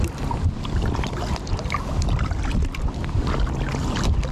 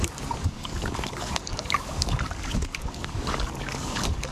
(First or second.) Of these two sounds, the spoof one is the second